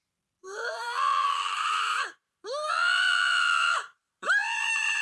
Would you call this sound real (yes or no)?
no